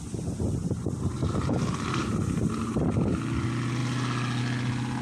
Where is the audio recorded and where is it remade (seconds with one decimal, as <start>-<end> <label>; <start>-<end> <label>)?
0.0-0.6 recorded; 0.6-2.8 remade; 2.8-5.0 recorded